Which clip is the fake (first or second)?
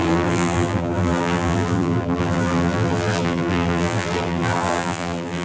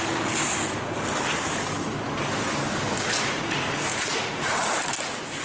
first